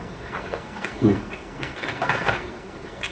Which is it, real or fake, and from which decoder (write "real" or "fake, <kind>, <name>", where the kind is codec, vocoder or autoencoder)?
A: fake, codec, SNAC